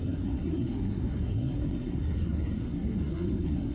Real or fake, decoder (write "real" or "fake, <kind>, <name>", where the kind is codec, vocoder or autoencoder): fake, codec, SNAC